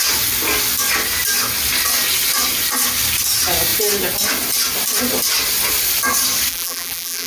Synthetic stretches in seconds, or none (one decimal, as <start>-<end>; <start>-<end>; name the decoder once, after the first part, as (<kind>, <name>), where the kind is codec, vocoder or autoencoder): 6.5-7.3 (vocoder, BigVGAN v2)